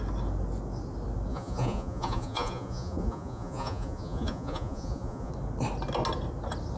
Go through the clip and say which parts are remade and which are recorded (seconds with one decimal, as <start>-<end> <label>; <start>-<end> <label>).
0.0-1.3 recorded; 1.3-5.3 remade; 5.3-6.8 recorded